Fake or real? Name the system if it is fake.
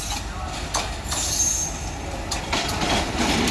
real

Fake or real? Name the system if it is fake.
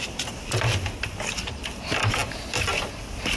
real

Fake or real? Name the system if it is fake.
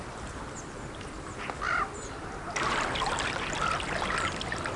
real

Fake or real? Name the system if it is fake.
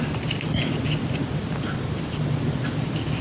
real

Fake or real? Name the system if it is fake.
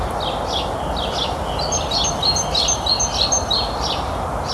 real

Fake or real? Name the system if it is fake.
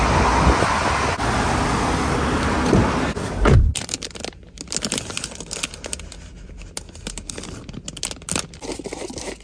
real